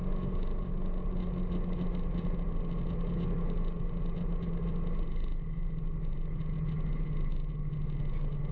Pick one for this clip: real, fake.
real